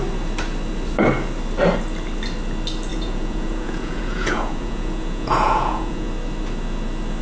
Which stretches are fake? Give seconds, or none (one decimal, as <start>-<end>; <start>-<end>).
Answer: 2.9-6.1

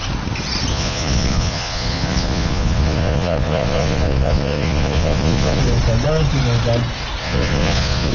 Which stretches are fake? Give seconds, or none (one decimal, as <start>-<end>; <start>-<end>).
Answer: 0.7-5.6; 7.2-8.1

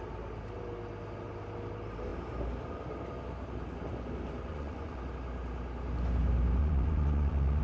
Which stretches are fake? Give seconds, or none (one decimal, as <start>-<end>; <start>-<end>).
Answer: 4.5-5.1; 6.6-7.6

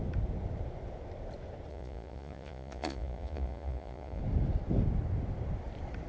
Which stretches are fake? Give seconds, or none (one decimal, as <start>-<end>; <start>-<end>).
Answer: 1.7-4.2